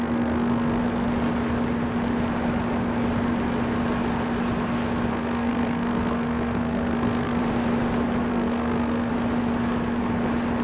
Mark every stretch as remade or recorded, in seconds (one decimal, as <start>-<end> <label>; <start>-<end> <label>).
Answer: 0.0-0.8 remade; 0.8-5.1 recorded; 5.1-7.4 remade; 7.4-8.3 recorded; 8.3-9.1 remade; 9.1-10.6 recorded